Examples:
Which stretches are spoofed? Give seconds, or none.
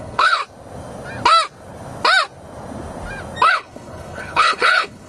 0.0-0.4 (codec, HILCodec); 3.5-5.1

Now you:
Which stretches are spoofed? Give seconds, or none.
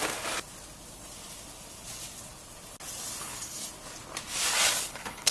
3.2-3.6 (codec, HILCodec); 4.8-5.3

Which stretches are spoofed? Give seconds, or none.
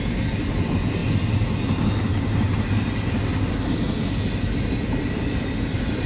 none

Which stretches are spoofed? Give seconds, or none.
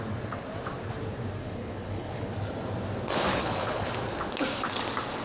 1.4-2.3 (codec, HILCodec); 3.3-3.9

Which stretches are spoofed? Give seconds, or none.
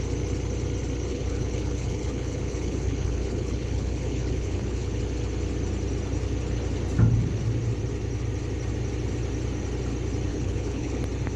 1.1-5.0 (codec, HILCodec); 10.3-11.0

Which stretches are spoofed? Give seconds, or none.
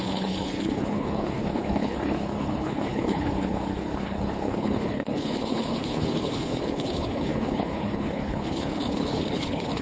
0.0-9.8 (codec, HILCodec)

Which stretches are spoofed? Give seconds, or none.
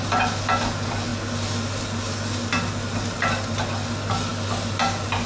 none